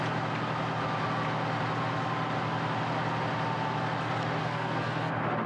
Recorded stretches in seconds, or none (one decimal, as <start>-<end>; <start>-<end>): 0.0-4.4; 5.1-5.5